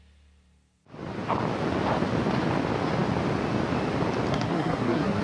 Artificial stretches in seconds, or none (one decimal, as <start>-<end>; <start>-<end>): 4.3-5.2